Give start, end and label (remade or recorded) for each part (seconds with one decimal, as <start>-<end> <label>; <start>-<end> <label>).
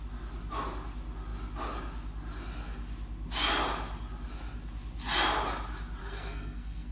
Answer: 0.0-6.0 recorded; 6.0-6.9 remade